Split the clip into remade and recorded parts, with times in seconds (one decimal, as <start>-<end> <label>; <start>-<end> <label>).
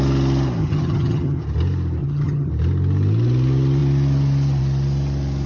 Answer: 0.0-0.6 recorded; 0.6-1.4 remade; 1.4-2.0 recorded; 2.0-2.5 remade; 2.5-5.5 recorded